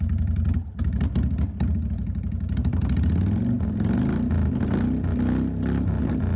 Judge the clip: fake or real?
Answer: real